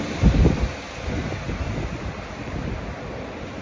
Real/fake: real